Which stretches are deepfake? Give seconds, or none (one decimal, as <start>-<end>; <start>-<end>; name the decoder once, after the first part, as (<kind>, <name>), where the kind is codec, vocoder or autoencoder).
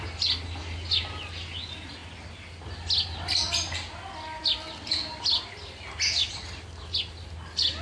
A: none